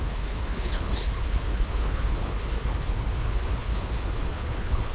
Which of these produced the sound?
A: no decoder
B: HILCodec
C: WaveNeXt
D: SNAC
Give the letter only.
B